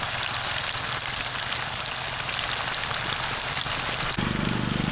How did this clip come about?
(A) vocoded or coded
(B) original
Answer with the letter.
B